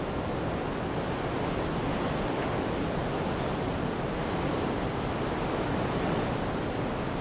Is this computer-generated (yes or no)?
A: no